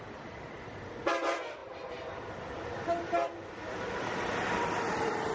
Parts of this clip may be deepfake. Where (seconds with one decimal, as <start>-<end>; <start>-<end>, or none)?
0.0-5.3